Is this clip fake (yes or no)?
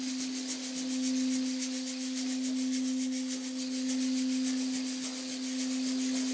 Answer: no